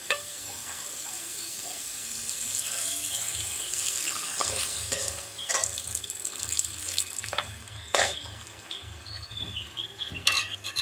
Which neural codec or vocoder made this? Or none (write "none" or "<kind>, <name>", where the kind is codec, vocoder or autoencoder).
codec, SNAC